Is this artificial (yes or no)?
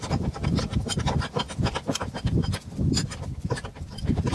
yes